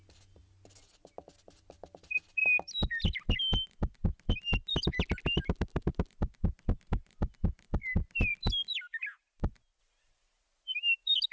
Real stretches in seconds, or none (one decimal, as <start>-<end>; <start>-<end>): 0.0-11.3